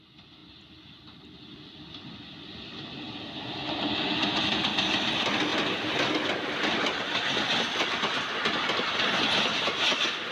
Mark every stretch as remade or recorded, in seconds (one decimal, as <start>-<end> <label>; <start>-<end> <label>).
0.0-10.3 recorded